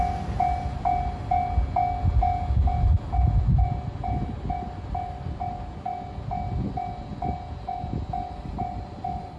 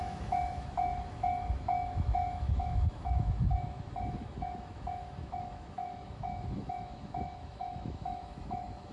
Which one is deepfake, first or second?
second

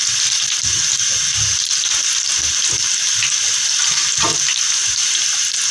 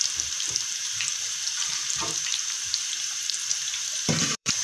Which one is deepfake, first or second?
second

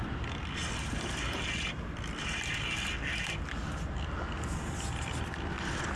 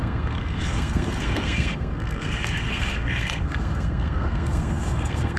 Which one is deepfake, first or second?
second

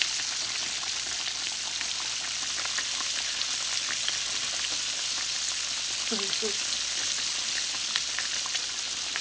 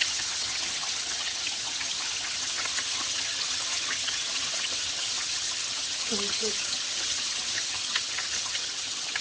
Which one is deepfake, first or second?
second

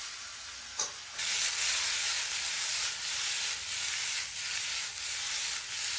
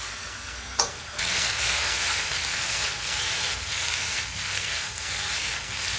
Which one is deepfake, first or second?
second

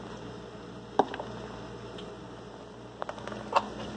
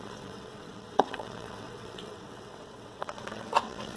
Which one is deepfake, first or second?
second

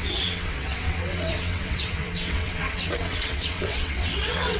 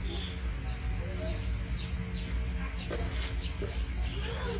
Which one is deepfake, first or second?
first